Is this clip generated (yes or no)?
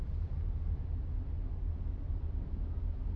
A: no